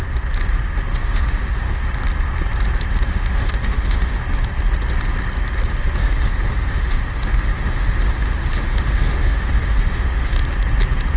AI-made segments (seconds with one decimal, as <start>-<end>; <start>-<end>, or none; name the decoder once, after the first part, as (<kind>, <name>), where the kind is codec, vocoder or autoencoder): 0.9-1.8 (autoencoder, DAC-VAE); 3.1-4.2; 6.0-10.4